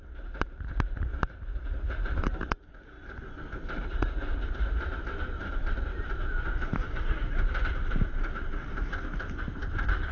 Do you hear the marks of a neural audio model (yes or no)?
yes